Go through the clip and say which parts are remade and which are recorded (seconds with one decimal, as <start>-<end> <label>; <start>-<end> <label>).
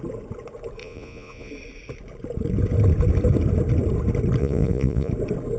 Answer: 0.0-0.8 recorded; 0.8-1.5 remade; 1.5-4.4 recorded; 4.4-5.1 remade; 5.1-5.6 recorded